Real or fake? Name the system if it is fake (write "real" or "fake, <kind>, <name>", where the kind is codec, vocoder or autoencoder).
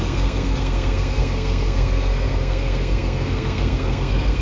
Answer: fake, codec, SNAC